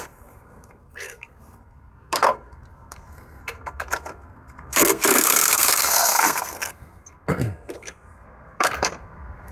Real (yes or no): no